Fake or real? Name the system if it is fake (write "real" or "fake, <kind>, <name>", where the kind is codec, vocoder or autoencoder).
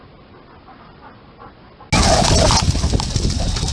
real